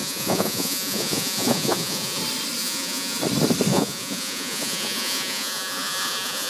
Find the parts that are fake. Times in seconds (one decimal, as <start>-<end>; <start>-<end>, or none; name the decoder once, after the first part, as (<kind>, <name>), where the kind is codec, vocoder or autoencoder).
0.0-2.2 (vocoder, Vocos); 2.6-3.2; 3.7-6.5